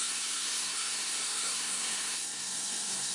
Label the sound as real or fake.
fake